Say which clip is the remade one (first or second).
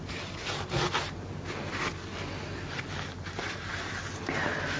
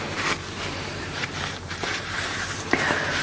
second